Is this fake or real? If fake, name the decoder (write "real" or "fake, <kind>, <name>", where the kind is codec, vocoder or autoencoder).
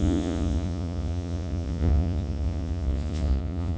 fake, vocoder, Vocos